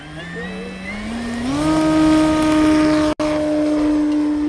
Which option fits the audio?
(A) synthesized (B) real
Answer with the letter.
B